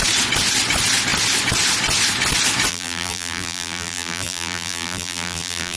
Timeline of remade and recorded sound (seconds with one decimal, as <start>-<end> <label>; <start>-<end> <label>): 0.0-2.7 recorded; 2.7-5.8 remade